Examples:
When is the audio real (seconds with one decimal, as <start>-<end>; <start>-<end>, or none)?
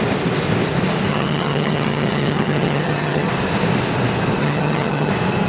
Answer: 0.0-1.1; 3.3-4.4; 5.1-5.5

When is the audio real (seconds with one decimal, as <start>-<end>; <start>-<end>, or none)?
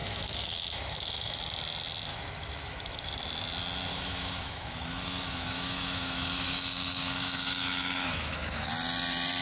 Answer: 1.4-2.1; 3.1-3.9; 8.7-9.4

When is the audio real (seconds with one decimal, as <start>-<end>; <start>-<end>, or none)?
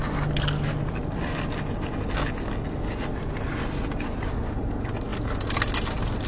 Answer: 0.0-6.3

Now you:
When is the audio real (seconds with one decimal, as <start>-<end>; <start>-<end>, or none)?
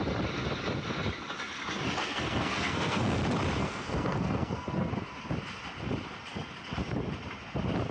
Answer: 0.0-2.0; 3.2-3.6; 4.9-7.9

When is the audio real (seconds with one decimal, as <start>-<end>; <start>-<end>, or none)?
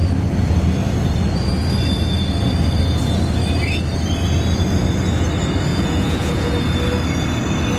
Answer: 0.0-5.7; 6.5-7.8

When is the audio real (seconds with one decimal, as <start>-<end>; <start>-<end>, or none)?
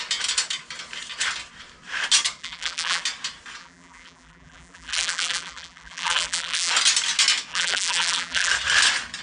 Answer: 0.0-2.4; 3.0-3.6; 6.7-7.5; 8.5-9.2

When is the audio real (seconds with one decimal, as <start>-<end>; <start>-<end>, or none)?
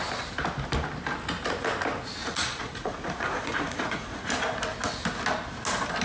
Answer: 0.0-2.2; 4.3-6.0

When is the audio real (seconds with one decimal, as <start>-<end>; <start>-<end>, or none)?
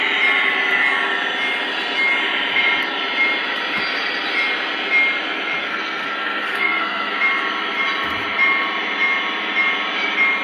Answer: 0.0-5.6; 7.1-10.4